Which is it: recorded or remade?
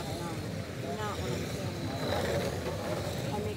recorded